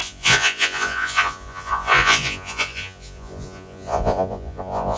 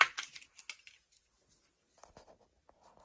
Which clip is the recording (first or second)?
second